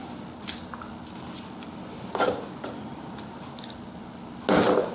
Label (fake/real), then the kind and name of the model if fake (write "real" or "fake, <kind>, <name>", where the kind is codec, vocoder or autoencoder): real